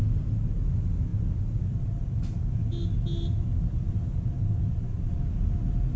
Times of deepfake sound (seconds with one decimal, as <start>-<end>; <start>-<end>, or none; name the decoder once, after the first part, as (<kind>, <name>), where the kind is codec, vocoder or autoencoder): none